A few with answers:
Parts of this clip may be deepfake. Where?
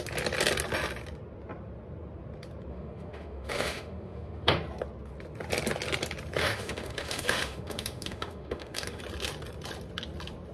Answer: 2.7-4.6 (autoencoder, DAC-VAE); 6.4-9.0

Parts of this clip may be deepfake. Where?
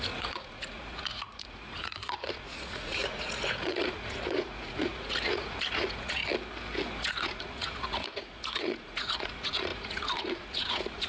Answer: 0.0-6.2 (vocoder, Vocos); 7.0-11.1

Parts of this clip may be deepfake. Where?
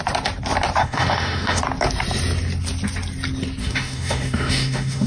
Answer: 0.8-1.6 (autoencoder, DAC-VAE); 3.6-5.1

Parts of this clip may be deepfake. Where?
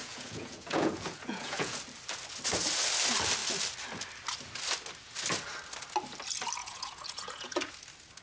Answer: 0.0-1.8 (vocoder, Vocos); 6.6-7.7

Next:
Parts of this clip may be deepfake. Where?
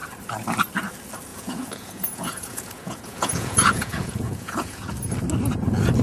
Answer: 1.3-4.9 (vocoder, Vocos)